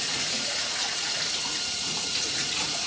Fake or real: fake